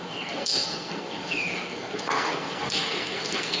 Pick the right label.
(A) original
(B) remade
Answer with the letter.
B